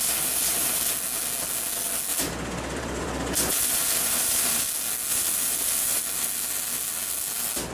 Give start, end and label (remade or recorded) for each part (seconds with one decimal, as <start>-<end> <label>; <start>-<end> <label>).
0.0-0.9 remade; 0.9-2.1 recorded; 2.1-4.6 remade; 4.6-5.1 recorded; 5.1-6.0 remade; 6.0-7.7 recorded